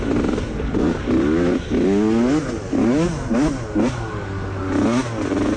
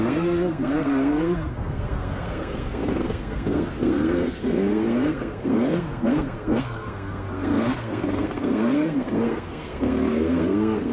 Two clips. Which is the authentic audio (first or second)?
first